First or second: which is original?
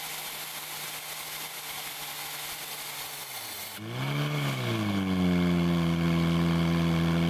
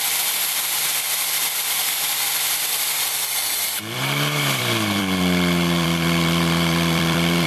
first